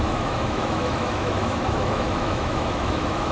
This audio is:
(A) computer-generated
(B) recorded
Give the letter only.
A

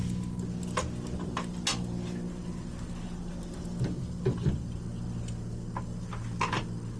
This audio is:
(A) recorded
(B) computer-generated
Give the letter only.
A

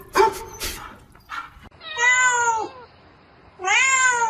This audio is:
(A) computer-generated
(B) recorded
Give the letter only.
B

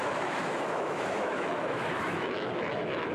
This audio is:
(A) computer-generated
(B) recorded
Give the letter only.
A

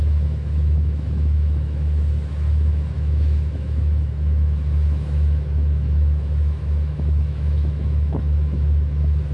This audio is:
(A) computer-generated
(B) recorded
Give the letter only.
A